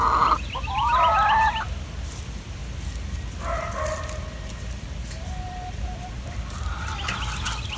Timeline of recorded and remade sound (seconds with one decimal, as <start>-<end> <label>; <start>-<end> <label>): 0.0-7.8 recorded